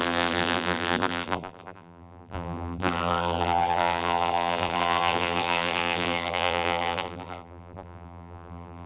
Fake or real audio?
fake